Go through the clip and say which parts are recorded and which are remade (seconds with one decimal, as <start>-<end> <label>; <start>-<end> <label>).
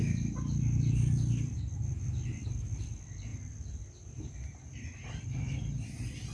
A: 0.0-6.3 recorded